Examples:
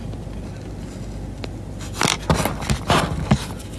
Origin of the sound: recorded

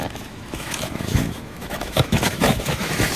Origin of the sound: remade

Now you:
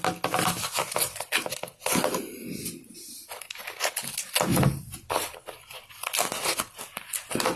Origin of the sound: recorded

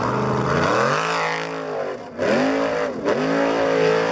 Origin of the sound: recorded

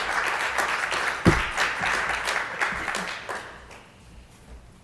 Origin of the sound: recorded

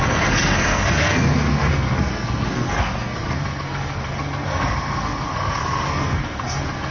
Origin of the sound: remade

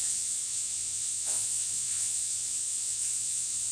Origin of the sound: remade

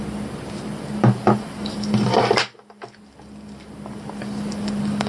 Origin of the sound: remade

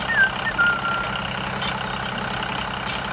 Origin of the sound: recorded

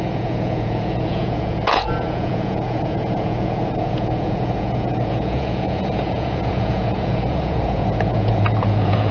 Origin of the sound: remade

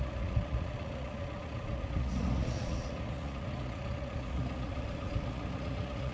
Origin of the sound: remade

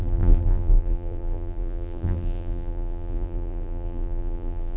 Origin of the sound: remade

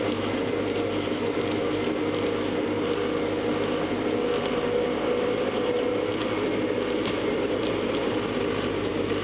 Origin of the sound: recorded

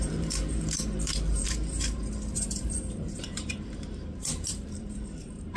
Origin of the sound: remade